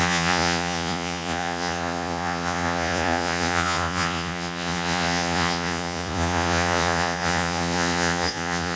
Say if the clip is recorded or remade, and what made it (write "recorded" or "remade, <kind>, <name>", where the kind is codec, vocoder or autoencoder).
remade, vocoder, Vocos